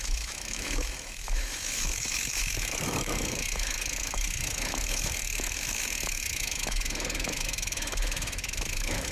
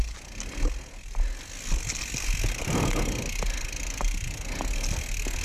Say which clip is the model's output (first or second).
first